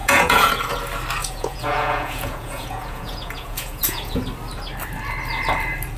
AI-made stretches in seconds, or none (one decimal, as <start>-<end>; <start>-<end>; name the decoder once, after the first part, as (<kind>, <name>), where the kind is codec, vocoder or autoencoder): 0.0-0.5 (vocoder, Vocos); 1.2-4.2